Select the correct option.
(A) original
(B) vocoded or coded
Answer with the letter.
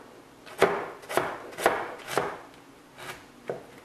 A